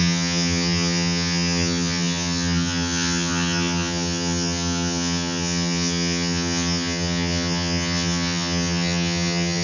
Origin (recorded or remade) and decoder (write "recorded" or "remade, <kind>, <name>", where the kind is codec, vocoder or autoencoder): remade, vocoder, HiFi-GAN